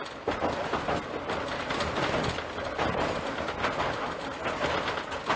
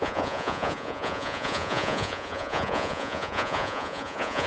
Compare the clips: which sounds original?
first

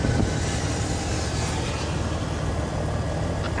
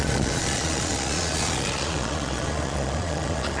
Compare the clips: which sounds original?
first